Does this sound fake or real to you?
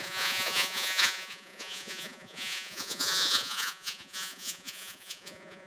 fake